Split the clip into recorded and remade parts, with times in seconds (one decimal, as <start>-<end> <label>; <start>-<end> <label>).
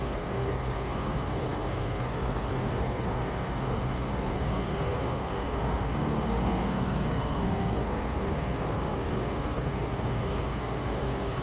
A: 0.0-11.4 remade